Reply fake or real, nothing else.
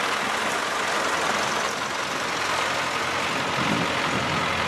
real